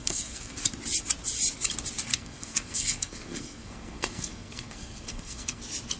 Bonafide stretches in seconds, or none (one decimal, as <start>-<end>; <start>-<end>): 0.6-2.1; 5.6-6.0